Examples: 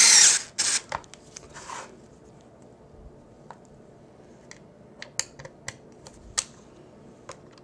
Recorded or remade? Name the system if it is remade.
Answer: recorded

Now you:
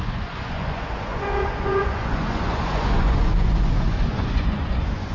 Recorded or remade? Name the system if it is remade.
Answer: remade, vocoder, Vocos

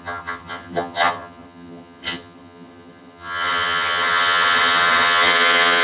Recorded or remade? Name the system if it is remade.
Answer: remade, vocoder, HiFi-GAN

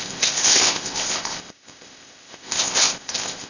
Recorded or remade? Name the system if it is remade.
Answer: remade, codec, ZipCodec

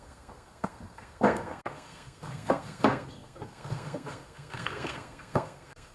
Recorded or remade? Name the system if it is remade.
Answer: remade, codec, SNAC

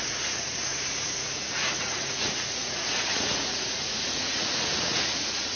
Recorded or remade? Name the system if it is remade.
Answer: remade, vocoder, Vocos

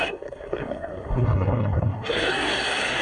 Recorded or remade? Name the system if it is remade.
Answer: remade, codec, SNAC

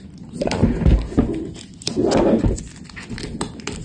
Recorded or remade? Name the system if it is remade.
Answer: recorded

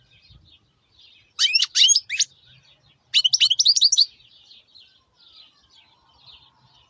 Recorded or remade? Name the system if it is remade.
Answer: recorded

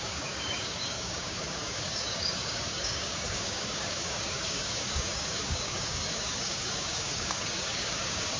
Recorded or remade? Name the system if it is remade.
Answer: remade, codec, DAC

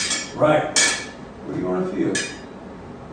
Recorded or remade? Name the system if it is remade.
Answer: recorded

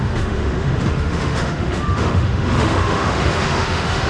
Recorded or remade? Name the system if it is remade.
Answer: remade, autoencoder, DAC-VAE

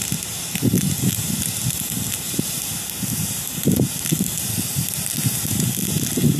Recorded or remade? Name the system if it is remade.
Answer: recorded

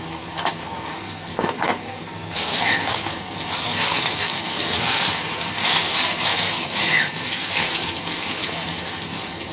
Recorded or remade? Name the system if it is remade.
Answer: remade, codec, SNAC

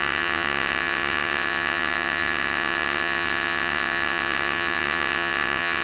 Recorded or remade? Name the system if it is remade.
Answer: remade, vocoder, WaveNeXt